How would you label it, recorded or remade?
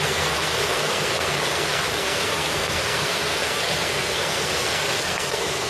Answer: remade